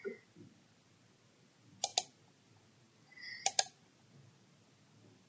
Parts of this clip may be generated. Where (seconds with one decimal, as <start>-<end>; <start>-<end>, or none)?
none